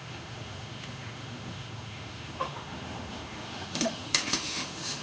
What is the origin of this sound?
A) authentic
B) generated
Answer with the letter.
B